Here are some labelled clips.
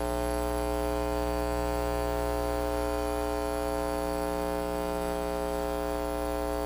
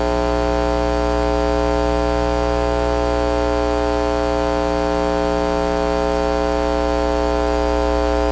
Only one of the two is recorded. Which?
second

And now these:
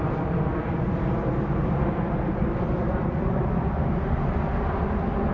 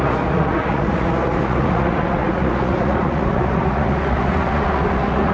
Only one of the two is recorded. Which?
first